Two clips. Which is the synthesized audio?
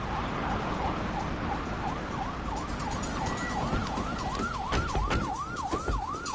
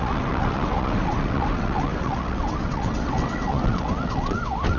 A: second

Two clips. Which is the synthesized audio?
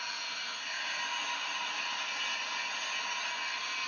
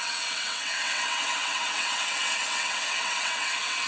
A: second